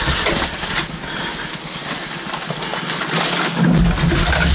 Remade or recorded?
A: recorded